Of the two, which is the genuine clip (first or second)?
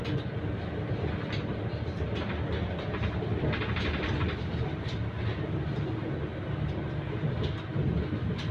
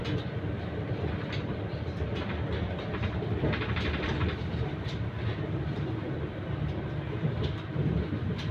first